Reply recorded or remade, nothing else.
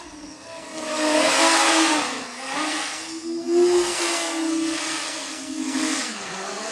remade